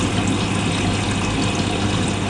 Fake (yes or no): no